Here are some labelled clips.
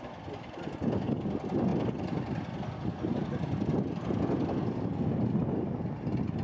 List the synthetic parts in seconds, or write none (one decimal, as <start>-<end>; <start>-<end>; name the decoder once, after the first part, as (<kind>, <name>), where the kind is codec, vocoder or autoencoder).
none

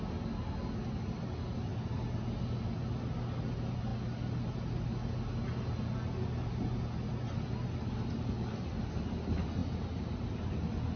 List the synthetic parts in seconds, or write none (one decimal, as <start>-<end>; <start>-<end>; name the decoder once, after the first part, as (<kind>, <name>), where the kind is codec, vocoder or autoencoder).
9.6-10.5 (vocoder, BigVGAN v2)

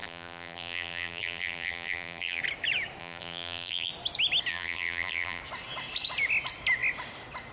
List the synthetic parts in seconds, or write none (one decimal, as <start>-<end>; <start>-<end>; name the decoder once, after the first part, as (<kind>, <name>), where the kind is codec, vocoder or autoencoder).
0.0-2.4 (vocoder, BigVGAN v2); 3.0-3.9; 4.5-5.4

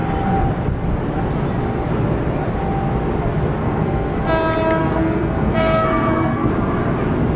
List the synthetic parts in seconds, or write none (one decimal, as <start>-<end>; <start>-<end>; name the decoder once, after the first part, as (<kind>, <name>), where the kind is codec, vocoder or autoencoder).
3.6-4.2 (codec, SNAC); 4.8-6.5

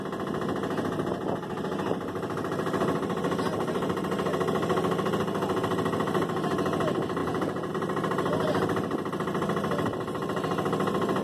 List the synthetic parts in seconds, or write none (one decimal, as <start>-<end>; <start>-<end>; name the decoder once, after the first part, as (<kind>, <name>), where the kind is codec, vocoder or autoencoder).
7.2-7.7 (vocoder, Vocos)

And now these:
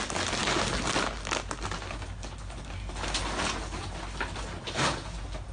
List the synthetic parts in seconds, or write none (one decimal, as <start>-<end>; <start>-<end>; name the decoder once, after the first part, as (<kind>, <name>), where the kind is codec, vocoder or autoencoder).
none

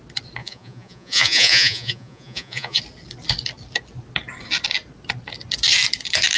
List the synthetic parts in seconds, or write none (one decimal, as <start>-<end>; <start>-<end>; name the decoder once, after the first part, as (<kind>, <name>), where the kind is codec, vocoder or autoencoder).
0.4-2.8 (vocoder, Vocos)

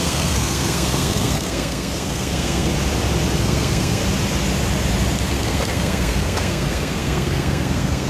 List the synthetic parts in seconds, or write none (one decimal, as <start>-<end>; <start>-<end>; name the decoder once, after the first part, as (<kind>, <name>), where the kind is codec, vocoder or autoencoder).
0.0-2.7 (codec, SNAC); 3.4-4.0; 5.3-8.1